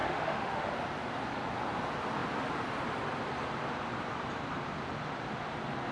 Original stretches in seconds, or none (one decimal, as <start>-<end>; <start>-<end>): 0.7-5.9